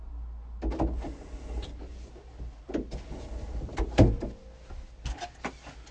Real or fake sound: real